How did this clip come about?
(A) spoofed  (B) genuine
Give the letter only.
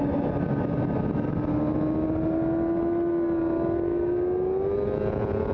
B